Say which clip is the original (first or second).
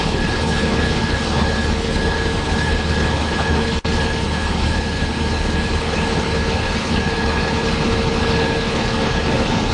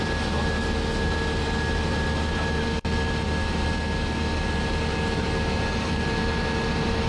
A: second